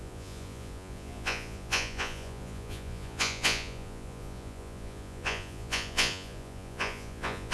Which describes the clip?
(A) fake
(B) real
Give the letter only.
A